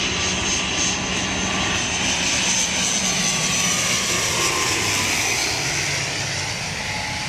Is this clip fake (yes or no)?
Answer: no